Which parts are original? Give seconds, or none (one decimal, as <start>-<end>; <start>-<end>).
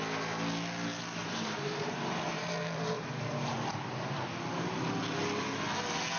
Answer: 0.0-1.2; 4.9-6.2